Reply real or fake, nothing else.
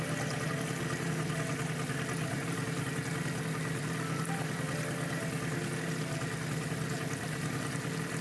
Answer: real